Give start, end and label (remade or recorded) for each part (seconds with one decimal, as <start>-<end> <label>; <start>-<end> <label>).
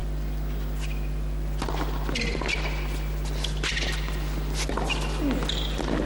0.0-6.1 recorded